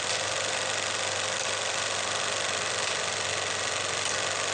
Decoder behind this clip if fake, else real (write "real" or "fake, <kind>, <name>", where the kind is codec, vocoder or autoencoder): real